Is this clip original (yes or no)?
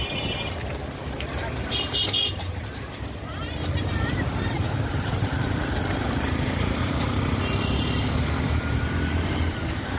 no